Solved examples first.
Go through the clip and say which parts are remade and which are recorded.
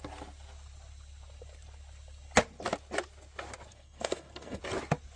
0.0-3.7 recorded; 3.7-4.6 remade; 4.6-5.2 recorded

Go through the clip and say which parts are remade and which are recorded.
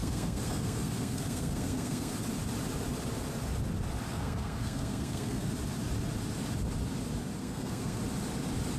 0.0-2.1 remade; 2.1-4.1 recorded; 4.1-5.5 remade; 5.5-7.4 recorded; 7.4-8.0 remade; 8.0-8.8 recorded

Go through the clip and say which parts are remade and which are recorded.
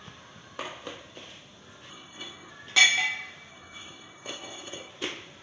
0.0-1.9 recorded; 1.9-2.5 remade; 2.5-3.5 recorded; 3.5-4.9 remade; 4.9-5.4 recorded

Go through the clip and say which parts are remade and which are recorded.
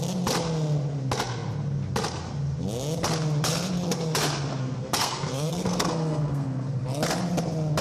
0.0-4.6 recorded; 4.6-6.8 remade; 6.8-7.8 recorded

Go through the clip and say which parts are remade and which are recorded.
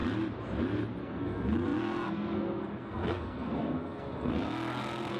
0.0-1.0 recorded; 1.0-5.2 remade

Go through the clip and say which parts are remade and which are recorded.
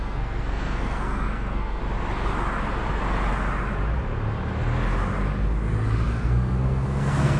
0.0-1.8 remade; 1.8-6.2 recorded; 6.2-7.4 remade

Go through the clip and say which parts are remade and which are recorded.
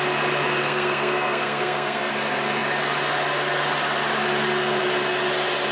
0.0-0.6 recorded; 0.6-2.1 remade; 2.1-5.7 recorded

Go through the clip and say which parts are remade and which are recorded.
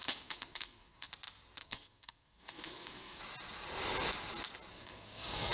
0.0-1.1 remade; 1.1-1.6 recorded; 1.6-3.2 remade; 3.2-4.7 recorded; 4.7-5.5 remade